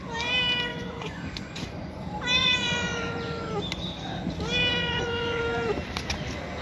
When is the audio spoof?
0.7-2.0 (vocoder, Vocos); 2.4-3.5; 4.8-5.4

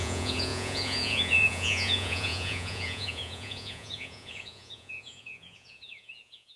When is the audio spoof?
0.0-6.6 (vocoder, Vocos)